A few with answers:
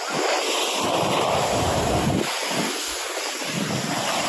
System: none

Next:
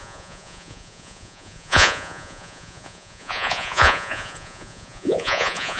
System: vocoder, Vocos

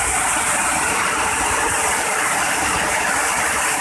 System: vocoder, BigVGAN v2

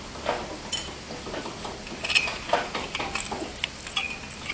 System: none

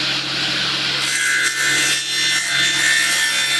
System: none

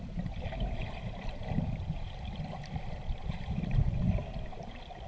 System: vocoder, BigVGAN v2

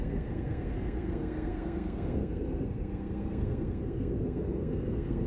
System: codec, SNAC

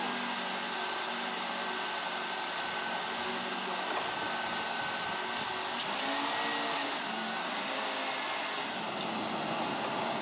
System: none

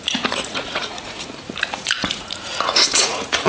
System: vocoder, Vocos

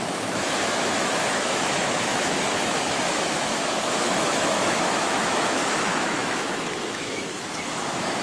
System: autoencoder, DAC-VAE